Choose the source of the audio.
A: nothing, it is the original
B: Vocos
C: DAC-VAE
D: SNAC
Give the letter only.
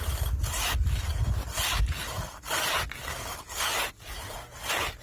A